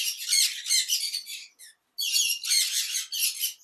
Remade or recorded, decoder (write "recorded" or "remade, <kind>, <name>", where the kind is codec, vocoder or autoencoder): recorded